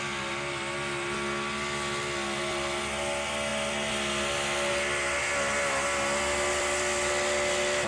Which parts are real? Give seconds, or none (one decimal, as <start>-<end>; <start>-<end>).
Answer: 0.0-7.9